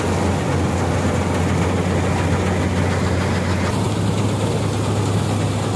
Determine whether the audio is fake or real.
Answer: real